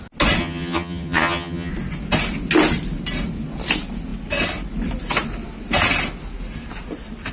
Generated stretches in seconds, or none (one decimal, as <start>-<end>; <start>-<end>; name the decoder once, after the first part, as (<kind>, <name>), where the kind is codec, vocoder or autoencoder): 0.4-1.7 (vocoder, HiFi-GAN)

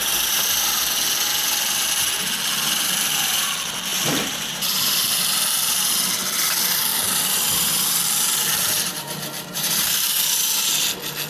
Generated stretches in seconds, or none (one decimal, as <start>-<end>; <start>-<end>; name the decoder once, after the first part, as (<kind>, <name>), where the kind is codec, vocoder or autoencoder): 3.9-5.2 (vocoder, BigVGAN v2); 6.9-10.1

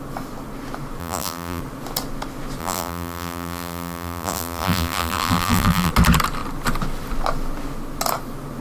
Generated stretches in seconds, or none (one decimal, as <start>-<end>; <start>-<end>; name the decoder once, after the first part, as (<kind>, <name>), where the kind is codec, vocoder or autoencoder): 1.0-1.6 (vocoder, BigVGAN v2); 2.6-5.9

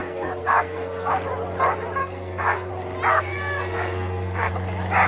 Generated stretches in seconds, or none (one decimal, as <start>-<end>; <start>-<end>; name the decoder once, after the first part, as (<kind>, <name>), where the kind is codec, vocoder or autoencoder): 0.0-1.1 (codec, SNAC); 2.0-2.7; 3.1-4.5

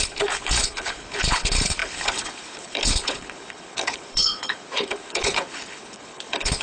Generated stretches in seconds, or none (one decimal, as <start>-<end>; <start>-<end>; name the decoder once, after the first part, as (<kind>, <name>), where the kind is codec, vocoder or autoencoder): 0.0-6.6 (codec, HILCodec)